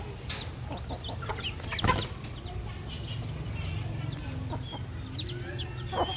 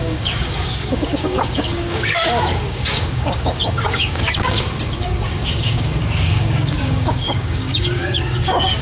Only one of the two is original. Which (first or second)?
first